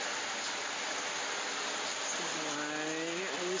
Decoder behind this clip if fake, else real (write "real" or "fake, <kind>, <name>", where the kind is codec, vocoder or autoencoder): real